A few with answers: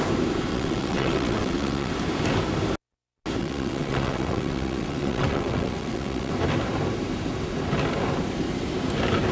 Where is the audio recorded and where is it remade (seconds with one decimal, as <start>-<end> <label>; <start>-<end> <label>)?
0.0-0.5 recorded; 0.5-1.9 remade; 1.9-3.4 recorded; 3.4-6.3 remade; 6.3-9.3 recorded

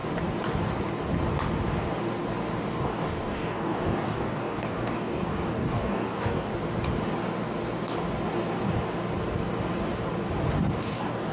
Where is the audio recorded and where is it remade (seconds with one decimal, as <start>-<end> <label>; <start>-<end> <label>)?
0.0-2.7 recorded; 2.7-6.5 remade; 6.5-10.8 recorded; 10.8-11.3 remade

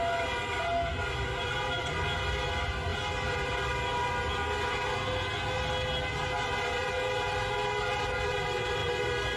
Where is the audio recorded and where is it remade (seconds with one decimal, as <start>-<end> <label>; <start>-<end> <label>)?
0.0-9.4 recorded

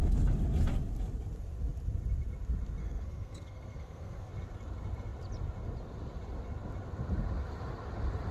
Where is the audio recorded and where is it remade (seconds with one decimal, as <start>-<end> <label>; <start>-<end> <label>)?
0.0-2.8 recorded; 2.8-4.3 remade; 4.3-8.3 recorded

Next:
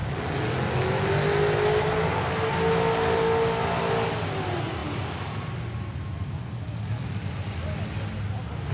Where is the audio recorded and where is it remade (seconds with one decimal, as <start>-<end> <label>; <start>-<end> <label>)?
0.0-8.7 recorded